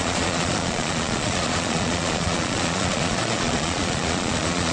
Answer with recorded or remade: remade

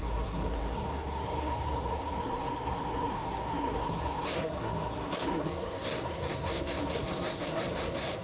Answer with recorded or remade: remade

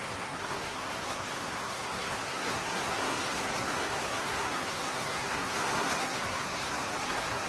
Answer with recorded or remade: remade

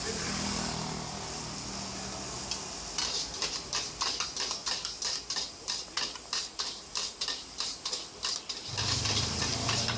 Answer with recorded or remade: recorded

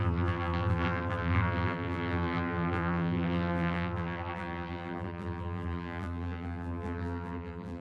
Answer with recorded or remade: remade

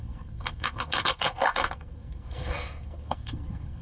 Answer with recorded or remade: remade